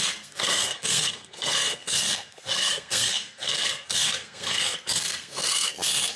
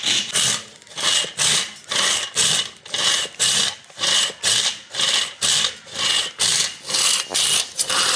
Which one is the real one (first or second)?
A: second